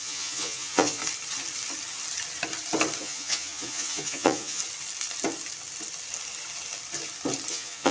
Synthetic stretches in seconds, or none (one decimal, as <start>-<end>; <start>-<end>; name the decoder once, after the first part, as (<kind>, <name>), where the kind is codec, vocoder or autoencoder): 0.0-1.0 (vocoder, Vocos); 3.0-4.6; 7.5-7.9